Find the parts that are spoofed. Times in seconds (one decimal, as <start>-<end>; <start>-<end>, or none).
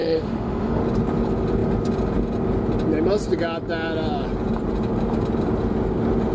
0.0-0.8